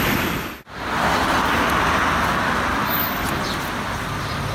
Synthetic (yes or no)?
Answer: no